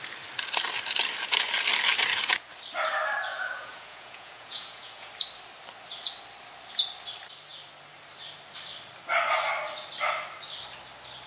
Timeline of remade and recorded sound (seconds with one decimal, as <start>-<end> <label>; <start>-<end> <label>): 0.0-3.3 recorded; 3.3-5.1 remade; 5.1-11.3 recorded